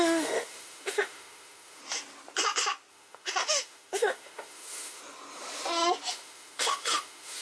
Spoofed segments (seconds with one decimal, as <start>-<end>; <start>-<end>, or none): 0.0-1.8; 2.9-5.0; 6.1-7.4